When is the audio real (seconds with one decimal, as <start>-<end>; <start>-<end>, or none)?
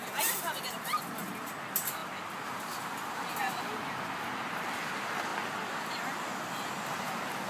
0.0-7.5